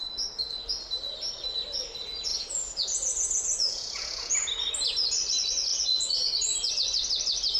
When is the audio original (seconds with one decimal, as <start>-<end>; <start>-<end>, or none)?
0.0-2.3; 4.5-5.7; 6.7-7.6